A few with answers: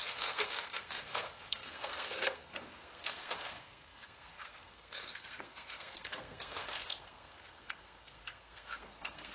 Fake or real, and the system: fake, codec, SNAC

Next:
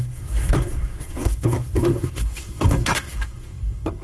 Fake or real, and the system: fake, codec, SNAC